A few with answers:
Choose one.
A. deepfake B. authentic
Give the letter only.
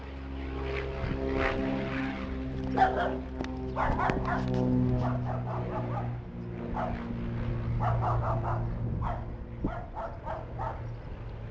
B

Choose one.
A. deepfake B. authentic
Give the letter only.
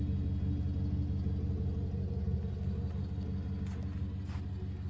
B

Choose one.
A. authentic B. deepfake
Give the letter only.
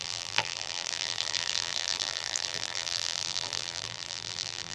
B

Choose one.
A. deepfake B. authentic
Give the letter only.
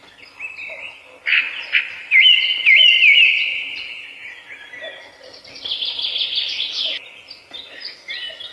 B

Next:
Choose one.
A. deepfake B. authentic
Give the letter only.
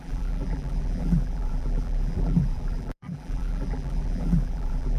A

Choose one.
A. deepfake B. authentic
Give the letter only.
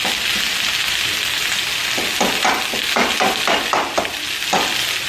B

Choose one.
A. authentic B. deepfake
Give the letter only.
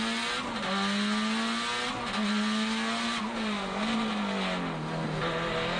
A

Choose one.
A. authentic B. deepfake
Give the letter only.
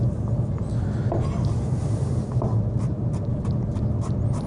B